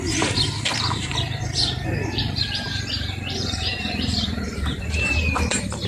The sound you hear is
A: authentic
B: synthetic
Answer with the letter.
B